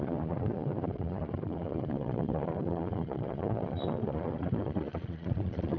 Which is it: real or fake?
fake